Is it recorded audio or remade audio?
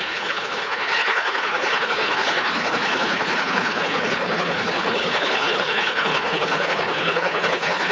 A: remade